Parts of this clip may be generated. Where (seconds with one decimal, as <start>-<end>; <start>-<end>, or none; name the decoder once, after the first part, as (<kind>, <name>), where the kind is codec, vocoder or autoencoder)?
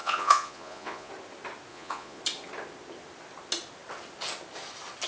0.0-1.1 (vocoder, Vocos); 1.7-2.2